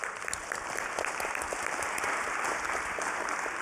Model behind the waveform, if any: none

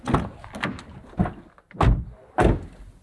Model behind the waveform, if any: none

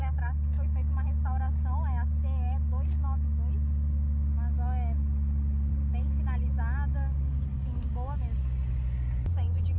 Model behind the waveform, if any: none